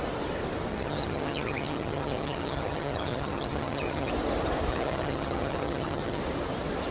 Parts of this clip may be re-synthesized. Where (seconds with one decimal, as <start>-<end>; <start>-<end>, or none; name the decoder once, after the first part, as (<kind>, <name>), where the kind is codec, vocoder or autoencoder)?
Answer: 0.7-4.1 (vocoder, HiFi-GAN); 4.7-6.2